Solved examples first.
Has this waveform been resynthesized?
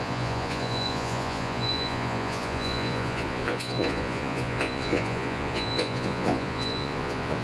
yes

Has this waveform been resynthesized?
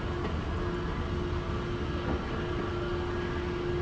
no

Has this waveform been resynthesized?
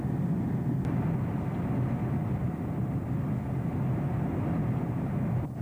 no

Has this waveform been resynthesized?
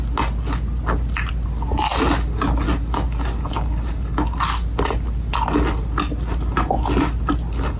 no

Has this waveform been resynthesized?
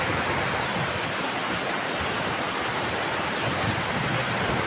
no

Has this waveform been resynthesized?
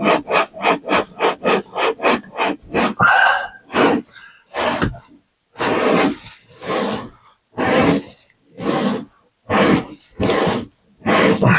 no